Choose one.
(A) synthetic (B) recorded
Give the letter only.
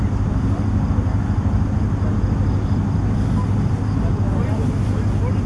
B